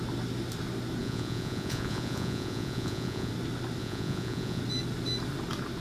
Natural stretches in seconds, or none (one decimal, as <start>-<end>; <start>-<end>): 0.0-1.0; 3.3-3.8; 4.6-5.8